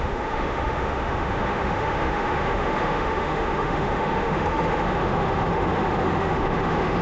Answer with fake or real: fake